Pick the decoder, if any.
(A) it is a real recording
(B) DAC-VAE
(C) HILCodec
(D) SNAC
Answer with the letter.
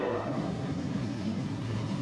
D